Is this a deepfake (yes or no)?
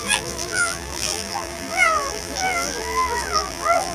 yes